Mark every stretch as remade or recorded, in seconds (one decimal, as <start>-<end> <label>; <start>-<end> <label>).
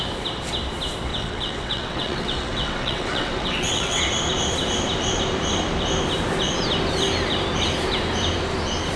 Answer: 0.0-1.1 recorded; 1.1-4.0 remade; 4.0-9.0 recorded